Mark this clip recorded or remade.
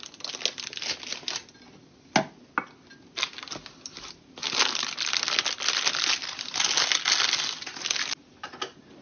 recorded